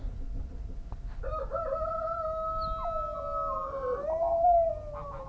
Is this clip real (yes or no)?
yes